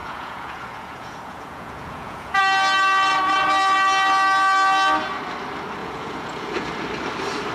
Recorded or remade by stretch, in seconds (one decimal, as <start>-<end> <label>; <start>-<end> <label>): 0.0-2.4 remade; 2.4-5.8 recorded; 5.8-6.7 remade; 6.7-7.5 recorded